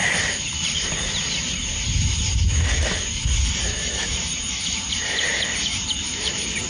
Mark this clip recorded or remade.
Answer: remade